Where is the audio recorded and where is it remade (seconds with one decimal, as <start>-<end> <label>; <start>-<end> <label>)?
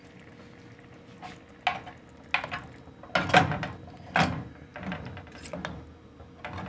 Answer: 0.0-6.7 recorded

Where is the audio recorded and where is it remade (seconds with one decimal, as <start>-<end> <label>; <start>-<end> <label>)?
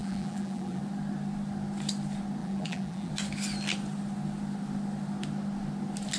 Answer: 0.0-0.8 remade; 0.8-2.4 recorded; 2.4-3.1 remade; 3.1-6.2 recorded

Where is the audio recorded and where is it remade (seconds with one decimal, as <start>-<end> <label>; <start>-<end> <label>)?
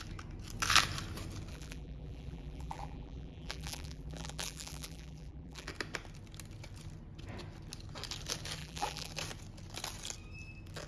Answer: 0.0-1.5 recorded; 1.5-5.7 remade; 5.7-8.6 recorded; 8.6-9.1 remade; 9.1-10.9 recorded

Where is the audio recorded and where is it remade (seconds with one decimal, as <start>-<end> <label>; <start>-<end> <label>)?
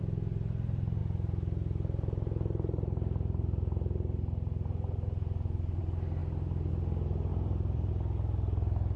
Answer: 0.0-6.2 recorded; 6.2-6.7 remade; 6.7-7.3 recorded; 7.3-7.9 remade; 7.9-9.0 recorded